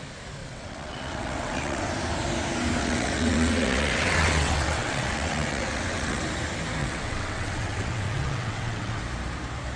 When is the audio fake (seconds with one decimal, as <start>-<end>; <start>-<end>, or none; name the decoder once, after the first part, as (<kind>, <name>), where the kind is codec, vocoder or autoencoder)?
0.4-1.8 (vocoder, WaveNeXt); 2.8-6.2; 6.8-9.0